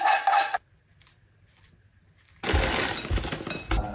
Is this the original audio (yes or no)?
yes